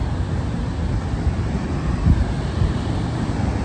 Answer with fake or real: real